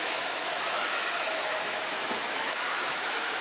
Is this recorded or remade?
remade